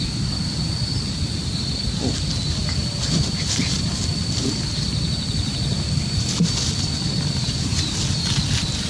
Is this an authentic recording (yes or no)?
yes